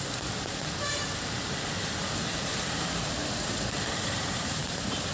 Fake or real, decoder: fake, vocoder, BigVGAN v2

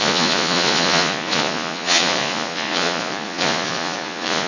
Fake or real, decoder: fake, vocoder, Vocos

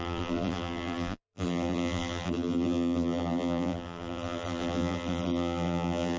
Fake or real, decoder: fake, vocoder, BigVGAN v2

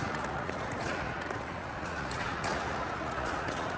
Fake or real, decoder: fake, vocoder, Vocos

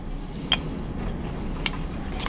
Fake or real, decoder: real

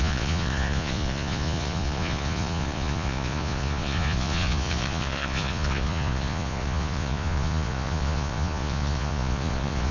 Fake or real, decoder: fake, vocoder, Vocos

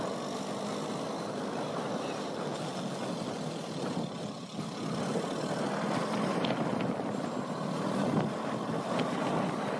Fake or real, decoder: real